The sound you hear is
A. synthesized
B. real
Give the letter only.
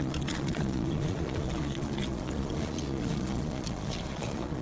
A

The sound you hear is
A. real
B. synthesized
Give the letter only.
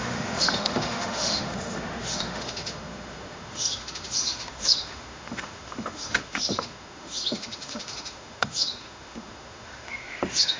B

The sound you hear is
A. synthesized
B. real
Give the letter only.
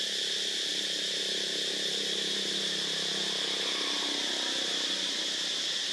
B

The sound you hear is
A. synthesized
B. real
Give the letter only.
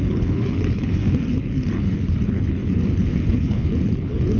A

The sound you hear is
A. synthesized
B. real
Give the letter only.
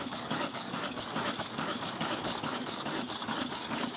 A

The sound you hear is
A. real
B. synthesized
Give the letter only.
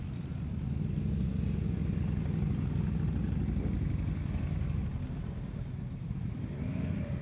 B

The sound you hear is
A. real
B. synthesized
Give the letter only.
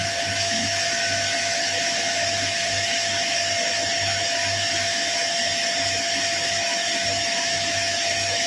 B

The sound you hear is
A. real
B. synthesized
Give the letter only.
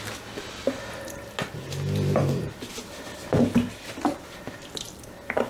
A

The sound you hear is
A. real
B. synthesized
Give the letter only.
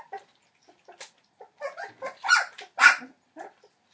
A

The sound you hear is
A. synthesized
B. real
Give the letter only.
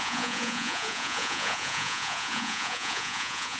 A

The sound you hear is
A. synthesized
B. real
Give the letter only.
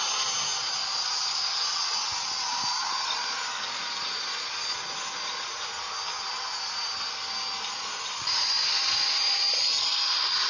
B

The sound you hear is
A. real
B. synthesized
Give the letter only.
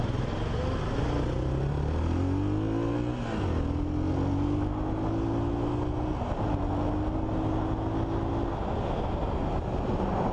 A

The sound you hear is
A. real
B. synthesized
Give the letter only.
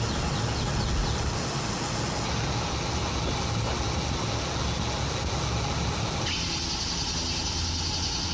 A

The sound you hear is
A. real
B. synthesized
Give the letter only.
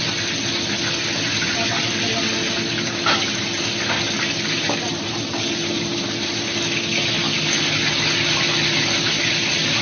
A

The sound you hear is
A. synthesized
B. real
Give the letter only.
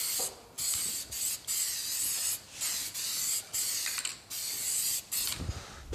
B